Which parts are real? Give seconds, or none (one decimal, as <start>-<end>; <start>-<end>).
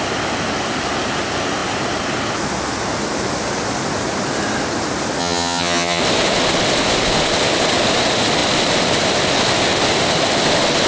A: 0.0-5.2; 6.0-10.9